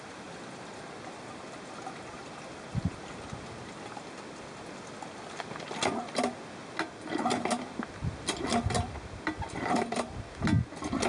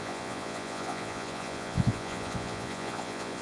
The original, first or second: first